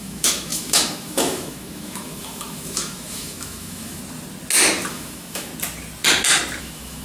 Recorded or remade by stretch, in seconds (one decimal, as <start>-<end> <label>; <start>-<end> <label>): 0.0-4.0 remade; 4.0-4.9 recorded; 4.9-5.5 remade; 5.5-6.6 recorded; 6.6-7.0 remade